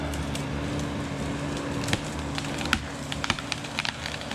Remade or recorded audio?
recorded